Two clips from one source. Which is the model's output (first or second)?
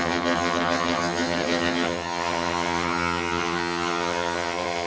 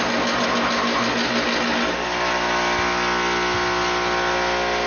first